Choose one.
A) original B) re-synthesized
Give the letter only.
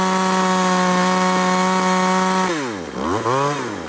A